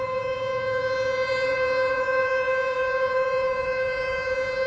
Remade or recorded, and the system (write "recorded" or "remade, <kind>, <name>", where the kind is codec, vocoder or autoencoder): remade, vocoder, Vocos